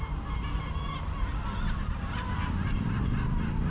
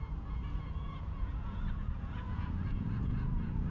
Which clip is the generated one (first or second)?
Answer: second